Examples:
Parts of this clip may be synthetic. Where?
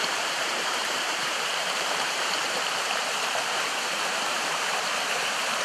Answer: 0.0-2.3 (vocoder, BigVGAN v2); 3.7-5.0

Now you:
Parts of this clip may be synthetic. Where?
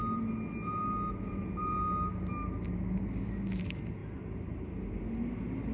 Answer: none